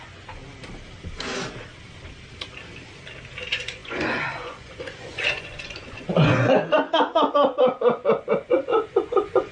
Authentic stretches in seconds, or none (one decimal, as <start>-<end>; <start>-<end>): 0.4-3.4